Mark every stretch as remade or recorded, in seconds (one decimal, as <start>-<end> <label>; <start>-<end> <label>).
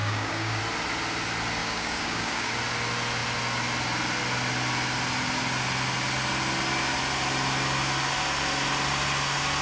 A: 0.0-0.6 remade; 0.6-1.6 recorded; 1.6-2.5 remade; 2.5-9.6 recorded